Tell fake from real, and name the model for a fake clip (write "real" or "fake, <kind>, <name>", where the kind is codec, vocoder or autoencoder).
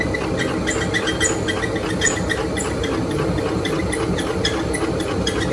real